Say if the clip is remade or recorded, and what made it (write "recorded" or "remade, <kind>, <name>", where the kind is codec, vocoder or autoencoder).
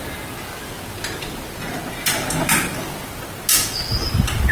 recorded